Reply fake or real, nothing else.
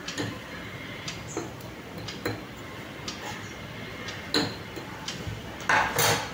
real